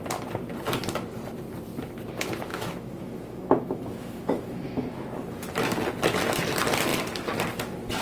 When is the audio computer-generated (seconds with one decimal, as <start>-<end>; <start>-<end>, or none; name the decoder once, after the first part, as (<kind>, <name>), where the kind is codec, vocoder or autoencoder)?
2.5-5.1 (autoencoder, DAC-VAE)